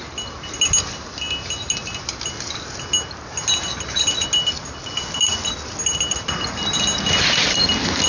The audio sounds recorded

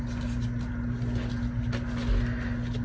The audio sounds recorded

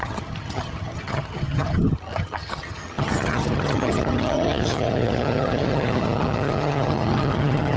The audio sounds remade